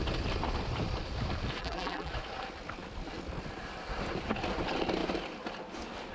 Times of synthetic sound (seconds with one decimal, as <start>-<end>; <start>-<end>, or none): 1.6-2.1